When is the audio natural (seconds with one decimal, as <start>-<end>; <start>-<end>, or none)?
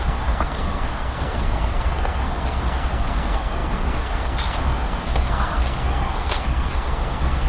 none